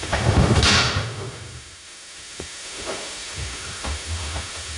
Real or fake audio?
fake